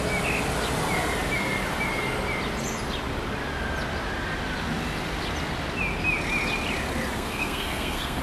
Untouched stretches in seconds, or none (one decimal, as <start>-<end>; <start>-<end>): 0.0-7.1

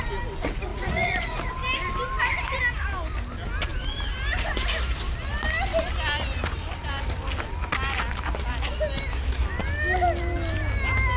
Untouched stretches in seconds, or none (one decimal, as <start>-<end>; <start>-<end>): 0.0-0.7; 1.5-11.2

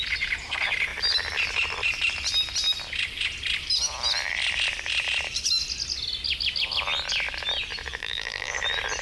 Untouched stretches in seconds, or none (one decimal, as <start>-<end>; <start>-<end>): 0.0-8.0; 8.5-9.0

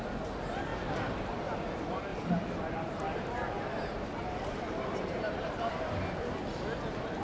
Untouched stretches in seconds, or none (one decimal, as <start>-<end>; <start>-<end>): 0.0-0.7; 1.4-2.1; 5.7-7.2

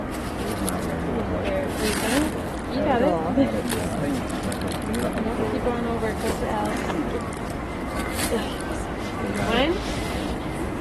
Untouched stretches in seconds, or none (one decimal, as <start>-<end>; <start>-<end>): 0.0-10.8

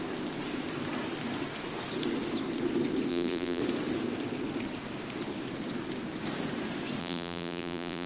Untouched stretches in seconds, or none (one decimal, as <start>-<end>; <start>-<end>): 0.0-3.1; 3.6-7.0

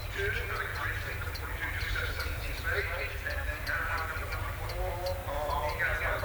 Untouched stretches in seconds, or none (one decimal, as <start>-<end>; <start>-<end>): 0.0-0.7; 3.9-5.2

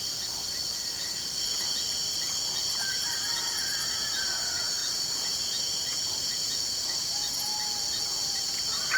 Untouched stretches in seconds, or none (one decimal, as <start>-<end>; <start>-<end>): 0.4-3.4; 7.5-8.1